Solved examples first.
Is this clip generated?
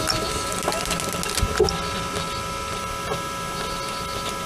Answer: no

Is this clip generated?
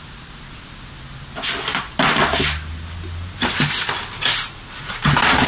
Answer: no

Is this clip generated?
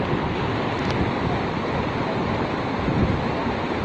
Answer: no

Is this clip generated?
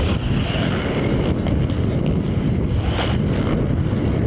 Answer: no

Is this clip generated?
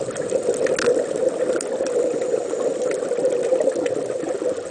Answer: no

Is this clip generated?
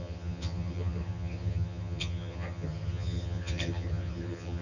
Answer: yes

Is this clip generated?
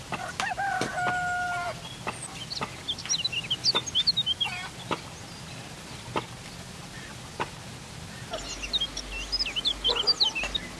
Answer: no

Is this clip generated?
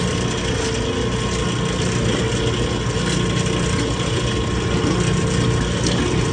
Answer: no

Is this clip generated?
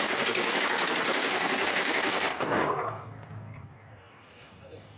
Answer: yes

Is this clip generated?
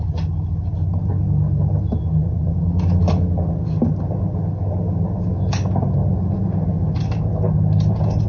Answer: no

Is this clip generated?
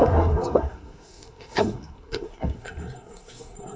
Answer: yes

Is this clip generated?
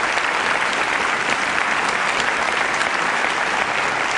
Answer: no